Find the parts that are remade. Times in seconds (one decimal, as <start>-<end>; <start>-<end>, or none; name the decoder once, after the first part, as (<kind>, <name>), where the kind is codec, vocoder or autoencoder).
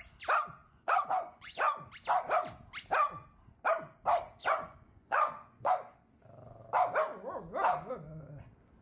0.6-1.9 (vocoder, Vocos); 4.4-5.7